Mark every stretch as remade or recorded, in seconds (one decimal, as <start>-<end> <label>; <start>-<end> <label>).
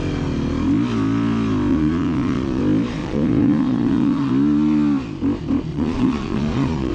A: 0.0-1.7 recorded; 1.7-2.6 remade; 2.6-3.0 recorded; 3.0-4.3 remade; 4.3-5.7 recorded; 5.7-6.9 remade